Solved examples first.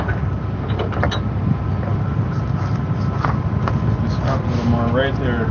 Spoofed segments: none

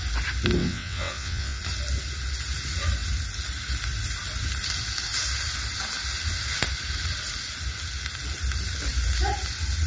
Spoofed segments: 0.6-1.6 (vocoder, WaveNeXt)

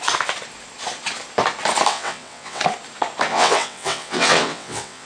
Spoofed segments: 1.9-2.6 (vocoder, WaveNeXt); 3.3-5.1

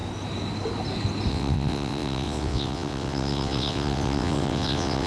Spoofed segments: 1.3-5.1 (vocoder, WaveNeXt)

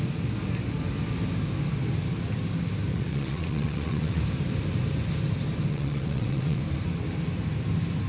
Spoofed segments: 2.9-4.2 (vocoder, WaveNeXt); 5.7-6.6